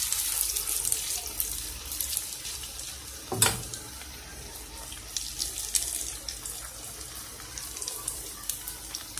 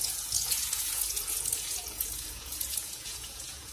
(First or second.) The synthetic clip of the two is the second